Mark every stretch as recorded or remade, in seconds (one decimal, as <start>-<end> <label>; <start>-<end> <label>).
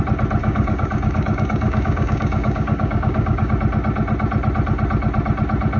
0.0-0.4 recorded; 0.4-3.5 remade; 3.5-5.8 recorded